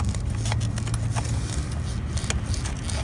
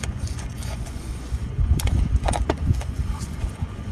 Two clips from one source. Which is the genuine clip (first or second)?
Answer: first